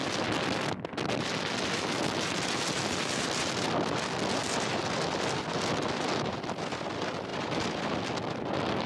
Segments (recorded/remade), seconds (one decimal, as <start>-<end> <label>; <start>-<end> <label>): 0.0-8.9 recorded